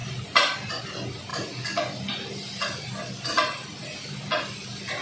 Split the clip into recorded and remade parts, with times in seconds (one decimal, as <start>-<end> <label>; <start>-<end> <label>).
0.0-5.0 recorded